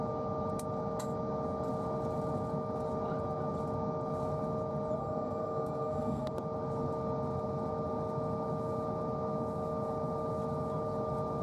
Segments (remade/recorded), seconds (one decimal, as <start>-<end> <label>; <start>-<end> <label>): 0.0-5.0 recorded; 5.0-6.3 remade; 6.3-11.4 recorded